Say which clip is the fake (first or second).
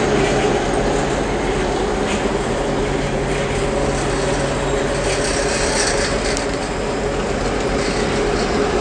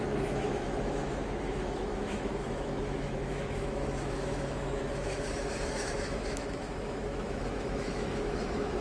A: second